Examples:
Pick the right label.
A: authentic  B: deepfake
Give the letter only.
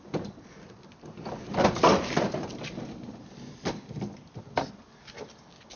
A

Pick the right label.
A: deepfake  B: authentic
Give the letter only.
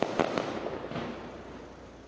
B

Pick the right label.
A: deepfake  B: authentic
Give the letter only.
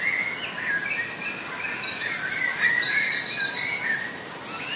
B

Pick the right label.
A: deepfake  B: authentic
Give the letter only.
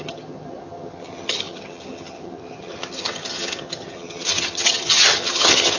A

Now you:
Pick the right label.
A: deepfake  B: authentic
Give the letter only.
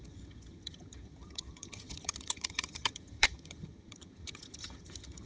A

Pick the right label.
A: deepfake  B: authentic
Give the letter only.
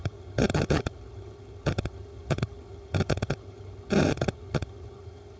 A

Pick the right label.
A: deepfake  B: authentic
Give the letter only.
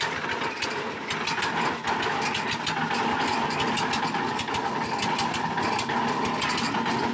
B